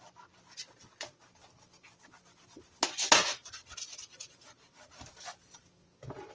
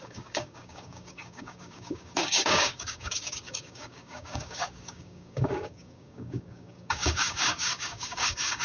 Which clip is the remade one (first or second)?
second